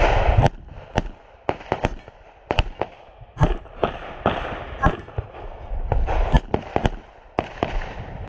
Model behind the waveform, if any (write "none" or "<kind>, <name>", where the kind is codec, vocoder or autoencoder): none